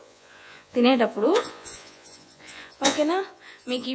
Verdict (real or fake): fake